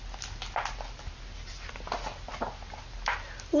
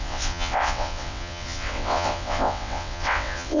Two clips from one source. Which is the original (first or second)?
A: first